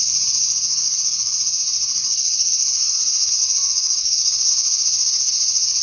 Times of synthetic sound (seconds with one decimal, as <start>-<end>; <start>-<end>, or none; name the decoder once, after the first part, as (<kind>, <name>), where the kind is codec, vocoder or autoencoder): 0.7-1.3 (codec, DAC); 2.0-3.0; 3.4-4.5